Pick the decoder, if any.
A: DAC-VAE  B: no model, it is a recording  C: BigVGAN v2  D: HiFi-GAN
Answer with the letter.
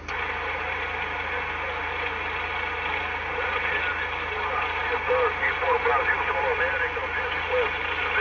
B